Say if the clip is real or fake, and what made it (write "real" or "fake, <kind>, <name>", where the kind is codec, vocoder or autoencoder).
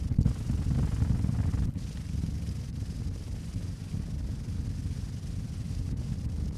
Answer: real